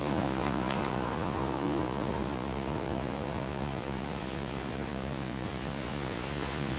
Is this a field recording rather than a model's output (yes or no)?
no